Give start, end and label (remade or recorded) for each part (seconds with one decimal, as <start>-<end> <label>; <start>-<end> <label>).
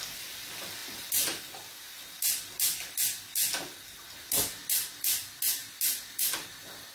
0.0-6.9 recorded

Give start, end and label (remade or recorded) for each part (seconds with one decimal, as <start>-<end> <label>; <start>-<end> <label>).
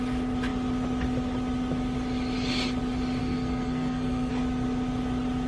0.0-3.2 recorded; 3.2-4.3 remade; 4.3-5.5 recorded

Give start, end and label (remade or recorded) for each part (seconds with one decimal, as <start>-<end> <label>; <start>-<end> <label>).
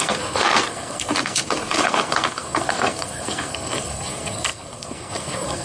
0.0-5.6 remade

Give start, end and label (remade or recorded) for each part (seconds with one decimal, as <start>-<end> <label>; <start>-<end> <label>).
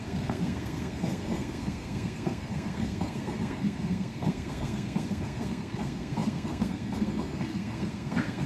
0.0-8.5 remade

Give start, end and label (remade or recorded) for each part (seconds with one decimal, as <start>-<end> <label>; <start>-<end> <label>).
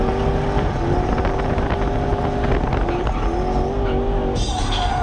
0.0-5.0 recorded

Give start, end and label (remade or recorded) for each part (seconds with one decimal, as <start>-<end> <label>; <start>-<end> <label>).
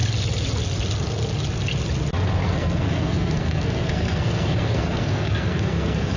0.0-2.4 recorded; 2.4-6.2 remade